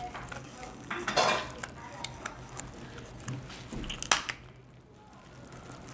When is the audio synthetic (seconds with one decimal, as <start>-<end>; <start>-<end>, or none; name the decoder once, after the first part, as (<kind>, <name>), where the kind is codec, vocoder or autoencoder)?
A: 0.4-1.1 (codec, DAC); 1.8-2.6